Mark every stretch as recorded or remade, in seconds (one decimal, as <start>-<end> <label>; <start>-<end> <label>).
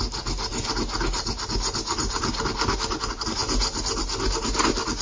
0.0-5.0 recorded